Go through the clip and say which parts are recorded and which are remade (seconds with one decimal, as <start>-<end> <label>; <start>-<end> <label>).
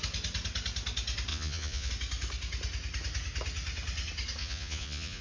0.0-1.3 recorded; 1.3-1.9 remade; 1.9-4.4 recorded; 4.4-5.2 remade